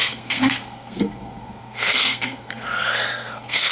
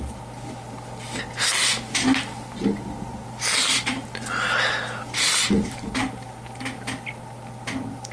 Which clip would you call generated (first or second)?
first